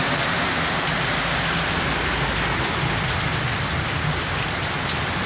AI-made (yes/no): no